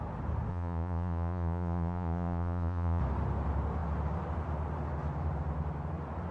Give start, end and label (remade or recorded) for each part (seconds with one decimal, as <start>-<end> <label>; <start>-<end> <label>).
0.0-0.5 recorded; 0.5-3.0 remade; 3.0-6.3 recorded